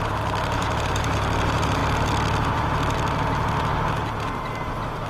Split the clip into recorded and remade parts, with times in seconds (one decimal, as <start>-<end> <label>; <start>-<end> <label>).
0.0-1.8 remade; 1.8-5.1 recorded